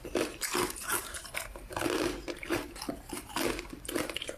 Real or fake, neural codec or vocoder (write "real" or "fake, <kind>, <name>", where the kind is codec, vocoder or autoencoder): fake, vocoder, BigVGAN v2